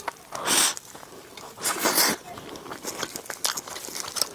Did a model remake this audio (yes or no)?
no